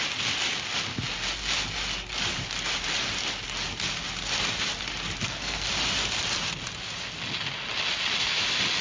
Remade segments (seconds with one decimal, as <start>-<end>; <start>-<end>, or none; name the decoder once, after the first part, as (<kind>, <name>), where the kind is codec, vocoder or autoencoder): 5.2-5.7 (codec, SNAC)